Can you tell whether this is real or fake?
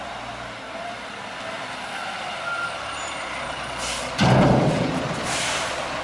fake